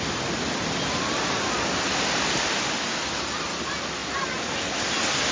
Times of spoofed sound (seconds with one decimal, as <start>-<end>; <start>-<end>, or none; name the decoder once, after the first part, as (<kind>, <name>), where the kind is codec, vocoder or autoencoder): none